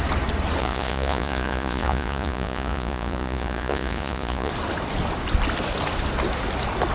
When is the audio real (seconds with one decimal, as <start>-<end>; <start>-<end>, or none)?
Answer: 0.0-0.6; 4.5-6.9

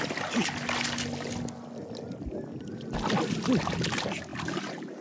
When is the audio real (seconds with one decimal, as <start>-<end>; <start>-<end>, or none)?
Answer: 0.0-4.3

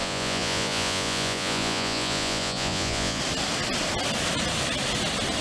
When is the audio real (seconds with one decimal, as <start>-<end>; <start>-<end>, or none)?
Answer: 3.2-5.4

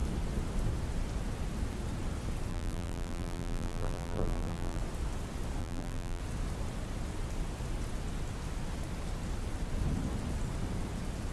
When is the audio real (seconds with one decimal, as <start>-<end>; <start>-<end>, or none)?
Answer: 0.0-2.5; 4.8-5.6; 6.2-11.3

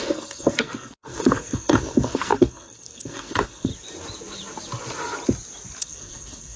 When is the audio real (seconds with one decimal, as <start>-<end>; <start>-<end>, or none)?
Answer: 3.7-5.8

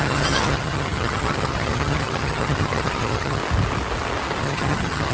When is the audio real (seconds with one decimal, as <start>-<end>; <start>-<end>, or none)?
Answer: 3.4-4.4